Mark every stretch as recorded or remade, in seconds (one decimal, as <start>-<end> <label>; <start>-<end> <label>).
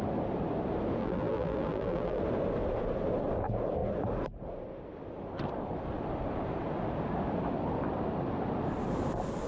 0.0-1.0 recorded; 1.0-2.2 remade; 2.2-9.5 recorded